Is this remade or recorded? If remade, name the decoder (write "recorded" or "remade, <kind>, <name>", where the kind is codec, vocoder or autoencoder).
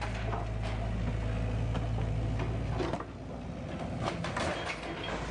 recorded